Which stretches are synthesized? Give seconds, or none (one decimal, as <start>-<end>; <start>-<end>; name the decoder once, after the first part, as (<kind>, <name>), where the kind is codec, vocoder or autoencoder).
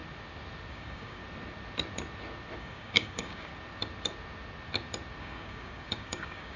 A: 0.7-1.2 (codec, DAC); 2.6-3.5; 5.2-6.6